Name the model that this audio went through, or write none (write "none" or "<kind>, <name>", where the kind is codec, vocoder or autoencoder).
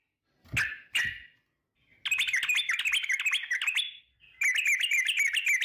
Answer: none